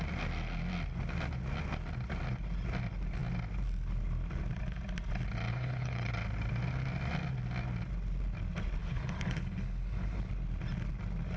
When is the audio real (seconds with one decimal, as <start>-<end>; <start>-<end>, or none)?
0.0-5.5; 6.1-8.8; 10.3-11.4